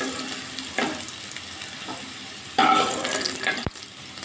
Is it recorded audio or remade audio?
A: recorded